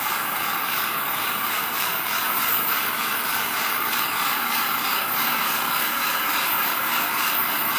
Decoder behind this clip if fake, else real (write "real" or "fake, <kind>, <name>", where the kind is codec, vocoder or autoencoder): fake, codec, DAC